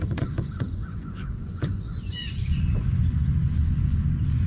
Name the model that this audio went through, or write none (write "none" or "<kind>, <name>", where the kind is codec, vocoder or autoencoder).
vocoder, Vocos